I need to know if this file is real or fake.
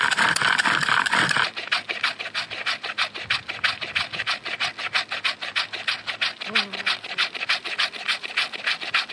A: real